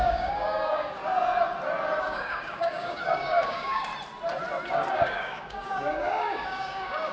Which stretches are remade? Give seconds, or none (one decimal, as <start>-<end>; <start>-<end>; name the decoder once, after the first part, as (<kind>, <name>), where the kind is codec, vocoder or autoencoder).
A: 0.0-1.0 (codec, DAC); 2.0-3.9; 4.9-7.1